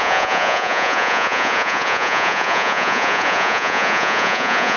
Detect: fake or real fake